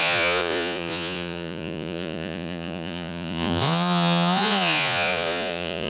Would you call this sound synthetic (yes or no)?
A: yes